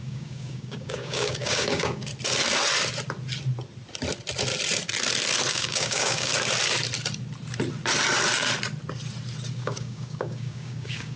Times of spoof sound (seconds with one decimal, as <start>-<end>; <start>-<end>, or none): 0.0-2.1; 5.5-6.3; 9.5-11.2